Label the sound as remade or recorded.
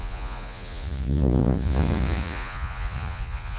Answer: remade